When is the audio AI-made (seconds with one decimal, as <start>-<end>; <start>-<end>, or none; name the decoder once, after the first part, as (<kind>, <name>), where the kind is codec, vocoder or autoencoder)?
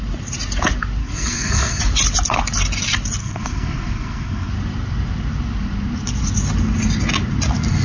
1.0-1.8 (codec, SNAC); 3.2-4.5